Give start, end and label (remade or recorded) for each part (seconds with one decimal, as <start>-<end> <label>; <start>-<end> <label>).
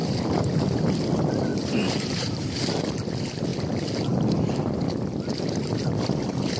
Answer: 0.0-0.8 remade; 0.8-1.5 recorded; 1.5-2.6 remade; 2.6-6.6 recorded